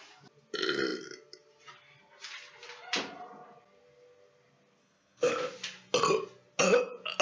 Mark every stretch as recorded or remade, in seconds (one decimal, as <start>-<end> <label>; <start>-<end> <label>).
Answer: 0.0-4.8 recorded; 4.8-5.3 remade; 5.3-7.2 recorded